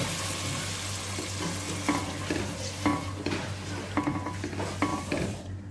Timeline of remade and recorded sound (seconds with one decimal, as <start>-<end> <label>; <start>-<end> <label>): 0.0-4.9 recorded; 4.9-5.7 remade